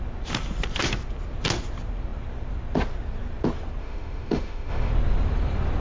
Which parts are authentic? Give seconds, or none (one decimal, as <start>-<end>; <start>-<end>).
0.0-3.8; 4.9-5.8